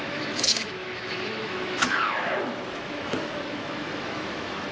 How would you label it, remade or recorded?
remade